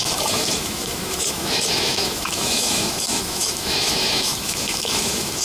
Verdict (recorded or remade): remade